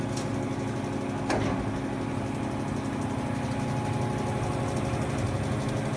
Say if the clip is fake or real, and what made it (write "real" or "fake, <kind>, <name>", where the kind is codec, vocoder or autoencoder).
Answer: real